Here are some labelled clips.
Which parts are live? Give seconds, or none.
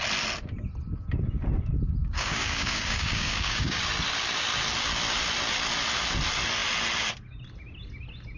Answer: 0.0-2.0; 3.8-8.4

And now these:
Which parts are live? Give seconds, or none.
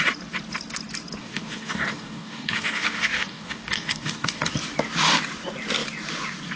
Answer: 0.0-1.2; 4.5-6.6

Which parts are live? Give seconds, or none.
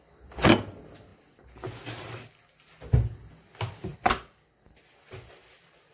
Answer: 0.0-5.9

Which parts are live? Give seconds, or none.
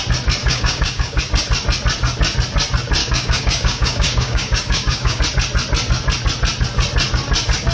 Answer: 0.0-0.4; 1.2-3.0; 5.2-7.7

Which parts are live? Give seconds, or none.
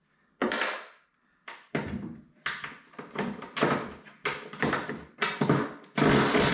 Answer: 0.0-6.5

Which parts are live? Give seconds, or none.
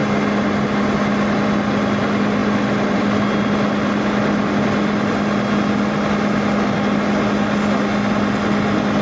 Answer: 0.0-9.0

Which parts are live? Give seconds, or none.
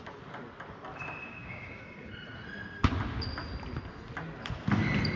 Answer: 0.0-1.2; 1.8-5.2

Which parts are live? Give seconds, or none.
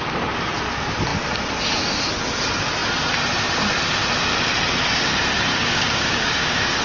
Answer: 0.0-5.5